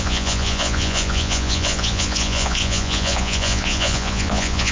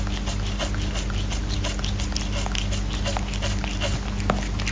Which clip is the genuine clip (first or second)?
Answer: second